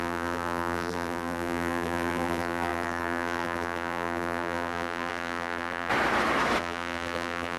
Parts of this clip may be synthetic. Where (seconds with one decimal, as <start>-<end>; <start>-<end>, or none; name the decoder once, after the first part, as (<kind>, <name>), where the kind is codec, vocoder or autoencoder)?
0.0-5.9 (vocoder, BigVGAN v2); 6.6-7.6